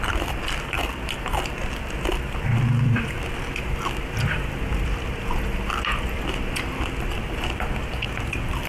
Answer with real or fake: fake